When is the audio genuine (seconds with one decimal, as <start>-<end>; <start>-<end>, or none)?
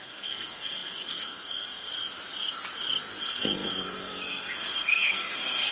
1.9-3.2